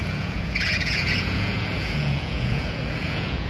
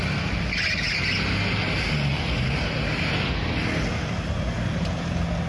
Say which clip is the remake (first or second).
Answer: first